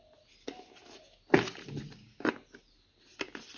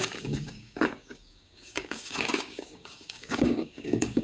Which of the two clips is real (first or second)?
first